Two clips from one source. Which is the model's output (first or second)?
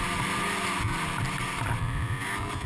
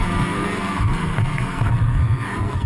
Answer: second